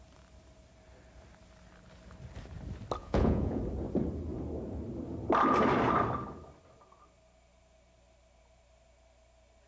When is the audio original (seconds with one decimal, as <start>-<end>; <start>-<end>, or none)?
0.0-3.0; 3.6-9.7